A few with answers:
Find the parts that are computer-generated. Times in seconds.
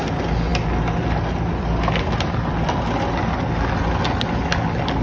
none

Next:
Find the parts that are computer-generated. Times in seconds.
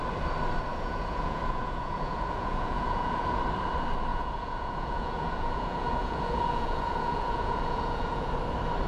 0.7-3.4 (vocoder, Vocos); 4.1-8.3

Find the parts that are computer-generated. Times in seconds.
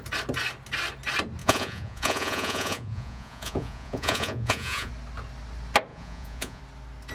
1.4-4.9 (vocoder, Vocos); 5.9-6.6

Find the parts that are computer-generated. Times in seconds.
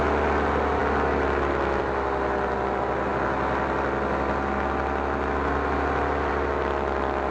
none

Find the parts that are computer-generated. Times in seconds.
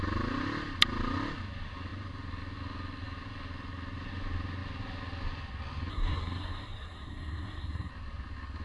5.9-7.9 (codec, SNAC)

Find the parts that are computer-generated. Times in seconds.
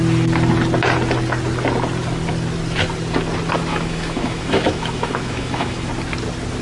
3.7-5.9 (autoencoder, DAC-VAE)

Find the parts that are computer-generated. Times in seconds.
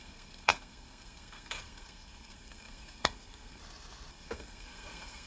0.0-3.6 (codec, SNAC); 4.1-5.3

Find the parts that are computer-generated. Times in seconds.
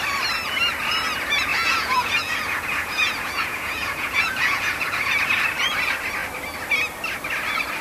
1.5-5.1 (vocoder, Vocos)